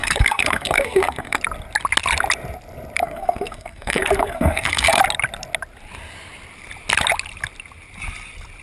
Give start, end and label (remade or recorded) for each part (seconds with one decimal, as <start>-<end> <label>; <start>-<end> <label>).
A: 0.0-1.4 remade; 1.4-3.0 recorded; 3.0-5.0 remade; 5.0-8.6 recorded